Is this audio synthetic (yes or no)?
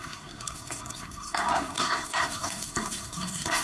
yes